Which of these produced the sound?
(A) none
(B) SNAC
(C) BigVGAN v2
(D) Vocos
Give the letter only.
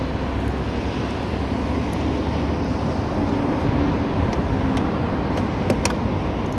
A